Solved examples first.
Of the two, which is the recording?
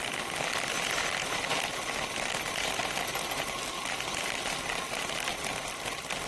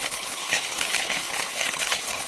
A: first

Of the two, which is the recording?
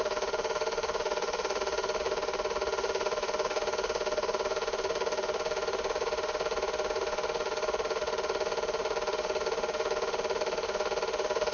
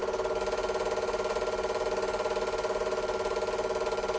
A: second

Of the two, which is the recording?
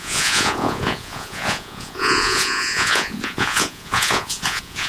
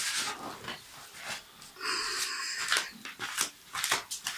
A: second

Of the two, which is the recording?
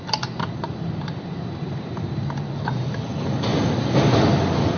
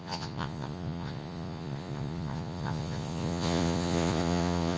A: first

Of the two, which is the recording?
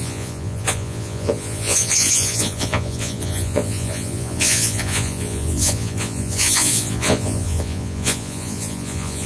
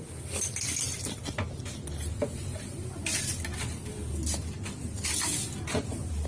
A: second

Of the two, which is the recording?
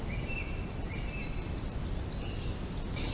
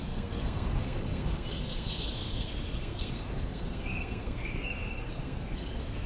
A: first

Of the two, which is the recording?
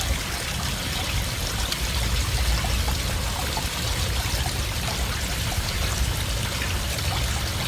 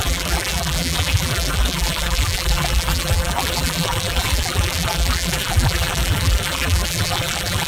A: first